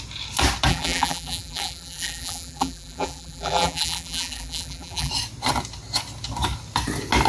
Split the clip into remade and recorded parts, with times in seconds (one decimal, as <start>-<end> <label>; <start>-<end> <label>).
0.0-0.7 recorded; 0.7-5.1 remade; 5.1-7.3 recorded